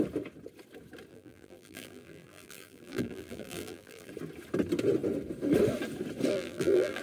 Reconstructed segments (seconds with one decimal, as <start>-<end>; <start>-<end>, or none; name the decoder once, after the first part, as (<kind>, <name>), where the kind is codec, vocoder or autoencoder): 1.1-4.1 (vocoder, BigVGAN v2); 6.3-7.0